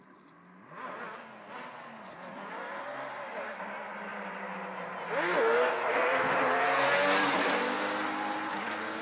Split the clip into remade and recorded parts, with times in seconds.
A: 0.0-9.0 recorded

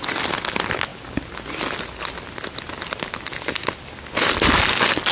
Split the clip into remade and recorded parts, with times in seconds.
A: 0.0-5.1 recorded

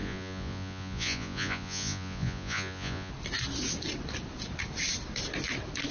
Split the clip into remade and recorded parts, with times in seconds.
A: 0.0-3.1 remade; 3.1-5.9 recorded

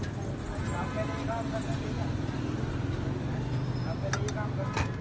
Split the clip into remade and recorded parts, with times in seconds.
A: 0.0-5.0 recorded

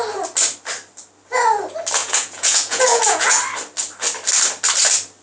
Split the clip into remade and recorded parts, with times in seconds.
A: 0.0-2.0 recorded; 2.0-3.4 remade; 3.4-5.2 recorded

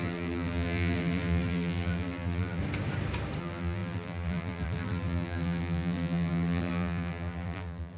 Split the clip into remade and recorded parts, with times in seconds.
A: 0.0-2.6 remade; 2.6-3.4 recorded; 3.4-8.0 remade

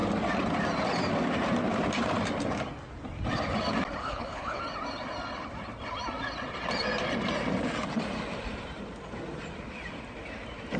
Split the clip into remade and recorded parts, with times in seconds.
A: 0.0-4.0 recorded; 4.0-4.6 remade; 4.6-10.8 recorded

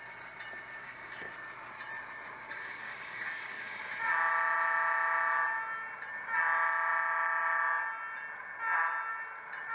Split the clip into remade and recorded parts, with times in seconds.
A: 0.0-0.8 recorded; 0.8-1.3 remade; 1.3-2.5 recorded; 2.5-3.8 remade; 3.8-9.7 recorded